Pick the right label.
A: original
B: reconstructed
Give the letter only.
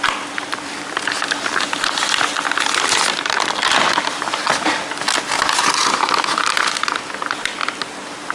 A